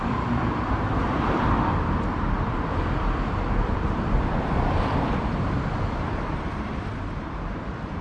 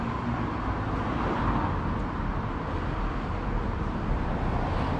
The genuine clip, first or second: second